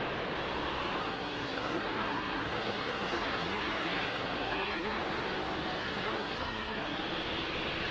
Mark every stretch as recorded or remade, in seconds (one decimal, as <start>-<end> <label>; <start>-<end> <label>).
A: 0.0-1.0 recorded; 1.0-5.0 remade; 5.0-5.8 recorded; 5.8-7.0 remade; 7.0-7.9 recorded